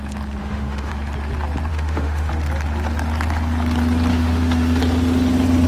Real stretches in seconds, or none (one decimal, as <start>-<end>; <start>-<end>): 0.0-0.4; 0.9-1.7; 2.3-4.1; 4.8-5.7